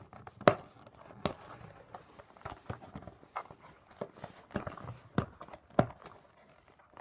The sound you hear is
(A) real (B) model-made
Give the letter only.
A